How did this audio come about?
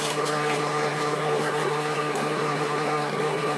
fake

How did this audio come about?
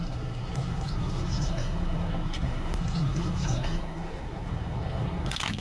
fake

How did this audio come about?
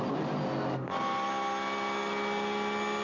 real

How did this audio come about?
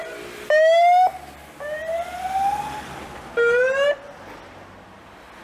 real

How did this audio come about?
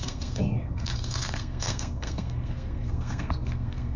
fake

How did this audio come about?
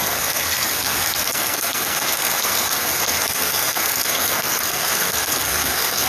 fake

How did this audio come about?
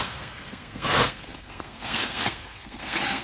fake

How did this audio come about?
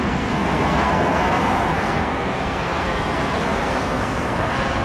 fake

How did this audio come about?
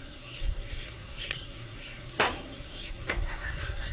fake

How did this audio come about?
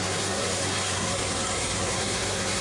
fake